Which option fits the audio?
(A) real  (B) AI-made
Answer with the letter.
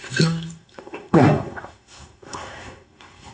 B